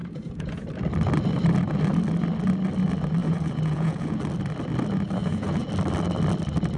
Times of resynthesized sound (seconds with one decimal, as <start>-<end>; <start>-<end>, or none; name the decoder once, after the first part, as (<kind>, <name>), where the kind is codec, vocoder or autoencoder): 0.0-0.6 (vocoder, Vocos); 3.2-4.2; 5.2-5.7